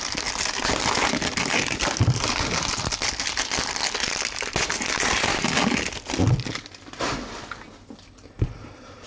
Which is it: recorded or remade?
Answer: recorded